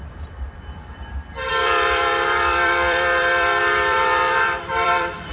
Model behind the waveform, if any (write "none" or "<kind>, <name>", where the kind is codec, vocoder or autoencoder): vocoder, BigVGAN v2